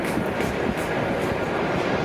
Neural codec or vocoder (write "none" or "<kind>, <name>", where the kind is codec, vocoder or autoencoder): none